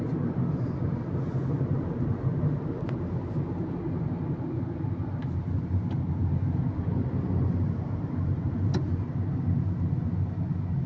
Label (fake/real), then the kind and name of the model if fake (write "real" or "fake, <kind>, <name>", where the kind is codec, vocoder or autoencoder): real